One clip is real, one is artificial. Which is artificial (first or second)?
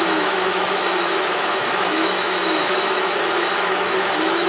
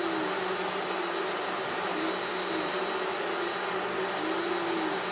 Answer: first